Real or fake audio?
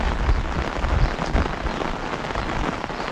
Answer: real